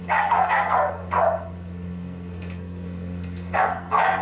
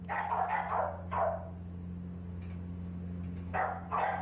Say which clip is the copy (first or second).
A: first